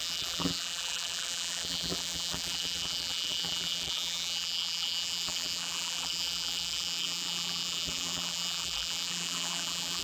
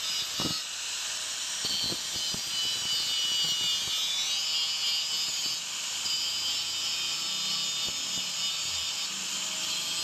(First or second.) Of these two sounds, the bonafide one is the second